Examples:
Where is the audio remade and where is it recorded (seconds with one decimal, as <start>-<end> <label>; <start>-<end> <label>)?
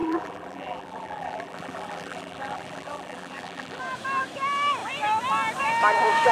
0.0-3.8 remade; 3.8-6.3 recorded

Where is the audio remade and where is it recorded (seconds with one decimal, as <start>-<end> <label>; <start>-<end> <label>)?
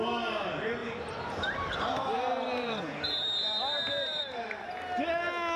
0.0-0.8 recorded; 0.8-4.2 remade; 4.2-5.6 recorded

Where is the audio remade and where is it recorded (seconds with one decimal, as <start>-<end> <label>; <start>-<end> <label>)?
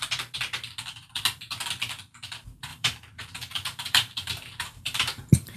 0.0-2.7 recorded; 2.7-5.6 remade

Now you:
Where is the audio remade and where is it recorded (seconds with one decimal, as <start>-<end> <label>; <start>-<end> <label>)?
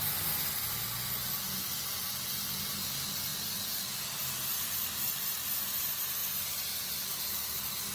0.0-2.0 recorded; 2.0-2.6 remade; 2.6-6.2 recorded; 6.2-7.1 remade; 7.1-7.9 recorded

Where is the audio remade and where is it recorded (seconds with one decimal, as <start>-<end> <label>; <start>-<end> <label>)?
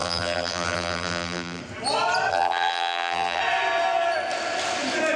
0.0-1.6 remade; 1.6-2.3 recorded; 2.3-3.4 remade; 3.4-5.2 recorded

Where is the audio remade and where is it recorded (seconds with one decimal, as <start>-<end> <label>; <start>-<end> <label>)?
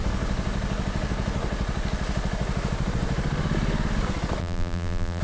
0.0-4.4 recorded; 4.4-5.2 remade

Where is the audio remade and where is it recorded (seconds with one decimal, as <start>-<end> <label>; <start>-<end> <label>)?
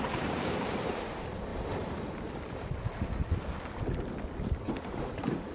0.0-1.5 remade; 1.5-4.8 recorded; 4.8-5.5 remade